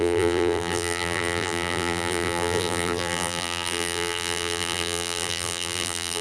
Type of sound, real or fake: fake